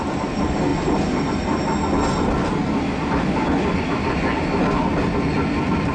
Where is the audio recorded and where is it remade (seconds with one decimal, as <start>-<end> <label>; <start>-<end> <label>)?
0.0-5.9 recorded